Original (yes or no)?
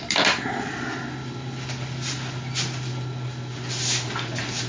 yes